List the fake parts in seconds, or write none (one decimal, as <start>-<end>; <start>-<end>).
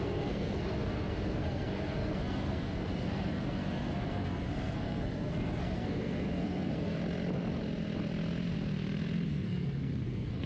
0.0-7.0; 9.3-10.5